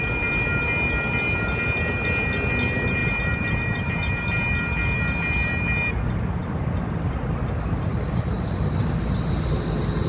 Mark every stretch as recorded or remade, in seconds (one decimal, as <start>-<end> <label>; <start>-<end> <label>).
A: 0.0-3.0 recorded; 3.0-4.2 remade; 4.2-10.1 recorded